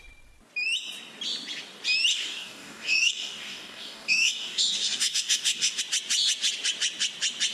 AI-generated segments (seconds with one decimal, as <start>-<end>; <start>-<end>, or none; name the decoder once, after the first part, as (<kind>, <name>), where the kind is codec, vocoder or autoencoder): 2.1-5.8 (codec, DAC)

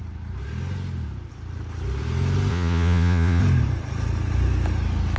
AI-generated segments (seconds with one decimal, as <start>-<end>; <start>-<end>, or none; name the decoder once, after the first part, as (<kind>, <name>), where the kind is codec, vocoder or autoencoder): 2.5-3.4 (vocoder, Vocos)

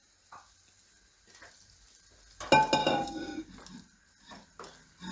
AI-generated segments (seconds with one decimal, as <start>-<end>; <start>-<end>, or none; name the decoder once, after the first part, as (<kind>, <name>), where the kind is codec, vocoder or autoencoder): 2.8-3.4 (codec, DAC)

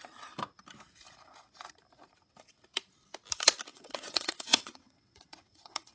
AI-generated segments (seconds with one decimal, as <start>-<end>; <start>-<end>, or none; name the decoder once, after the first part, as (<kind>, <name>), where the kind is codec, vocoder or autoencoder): 3.7-5.9 (vocoder, WaveNeXt)

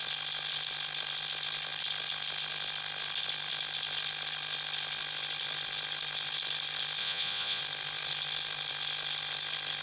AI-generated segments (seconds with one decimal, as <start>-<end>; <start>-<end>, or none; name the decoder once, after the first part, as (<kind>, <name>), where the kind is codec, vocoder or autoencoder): 7.0-7.6 (vocoder, Vocos)

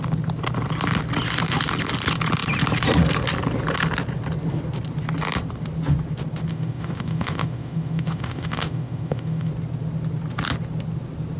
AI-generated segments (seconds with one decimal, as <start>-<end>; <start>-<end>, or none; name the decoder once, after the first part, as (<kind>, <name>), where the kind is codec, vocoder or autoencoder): 6.5-9.5 (autoencoder, DAC-VAE)